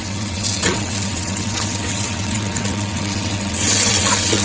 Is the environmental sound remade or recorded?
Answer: remade